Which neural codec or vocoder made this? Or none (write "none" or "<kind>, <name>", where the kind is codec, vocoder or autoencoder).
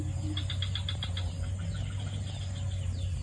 none